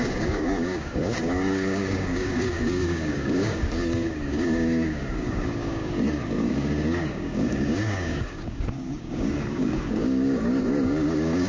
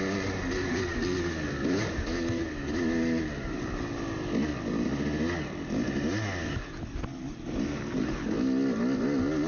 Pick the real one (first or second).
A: second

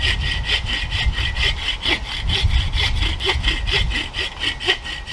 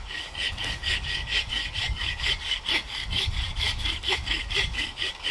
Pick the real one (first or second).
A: first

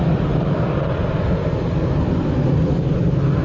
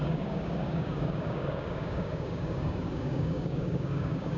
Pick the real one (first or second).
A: first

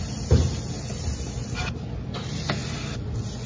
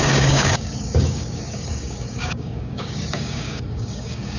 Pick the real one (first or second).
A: first